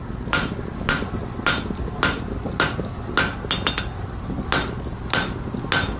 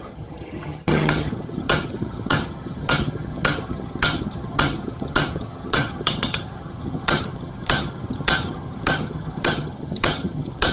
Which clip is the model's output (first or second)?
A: second